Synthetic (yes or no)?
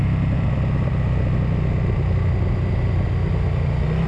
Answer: no